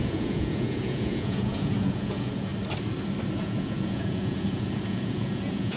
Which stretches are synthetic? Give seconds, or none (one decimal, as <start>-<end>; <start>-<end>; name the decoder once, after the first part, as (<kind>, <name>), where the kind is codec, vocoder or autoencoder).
0.0-2.5 (vocoder, Vocos); 3.4-5.8